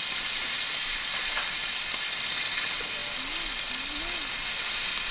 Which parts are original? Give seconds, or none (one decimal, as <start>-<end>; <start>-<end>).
0.0-5.1